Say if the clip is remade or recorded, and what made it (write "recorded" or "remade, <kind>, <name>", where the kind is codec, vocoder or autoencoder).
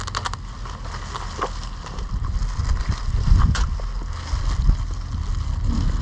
recorded